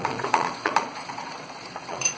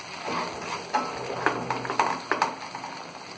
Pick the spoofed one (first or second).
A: first